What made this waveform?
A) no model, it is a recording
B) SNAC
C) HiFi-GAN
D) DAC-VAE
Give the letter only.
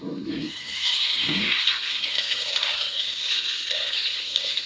B